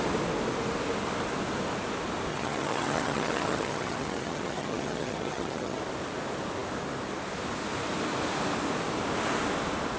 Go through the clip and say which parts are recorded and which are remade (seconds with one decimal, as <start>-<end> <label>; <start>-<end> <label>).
0.0-2.3 recorded; 2.3-5.8 remade; 5.8-10.0 recorded